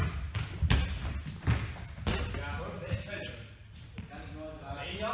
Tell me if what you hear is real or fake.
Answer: real